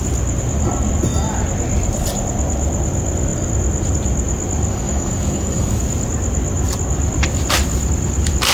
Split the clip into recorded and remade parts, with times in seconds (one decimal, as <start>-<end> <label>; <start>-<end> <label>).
0.0-4.7 recorded; 4.7-5.8 remade; 5.8-8.5 recorded